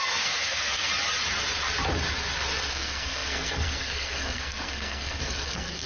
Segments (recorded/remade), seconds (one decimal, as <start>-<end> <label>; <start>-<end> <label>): 0.0-0.9 remade; 0.9-2.7 recorded; 2.7-5.9 remade